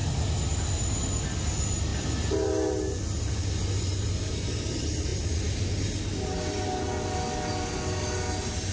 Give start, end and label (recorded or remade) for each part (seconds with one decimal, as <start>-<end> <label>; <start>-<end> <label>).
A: 0.0-8.7 recorded